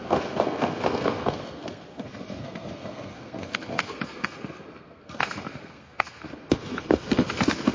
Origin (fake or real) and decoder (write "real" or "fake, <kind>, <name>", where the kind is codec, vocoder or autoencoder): fake, codec, SNAC